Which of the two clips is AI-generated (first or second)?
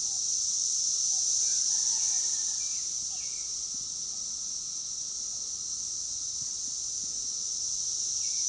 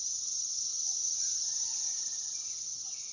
second